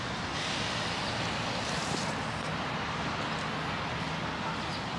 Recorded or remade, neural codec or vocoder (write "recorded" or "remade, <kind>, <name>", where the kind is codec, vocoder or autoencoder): recorded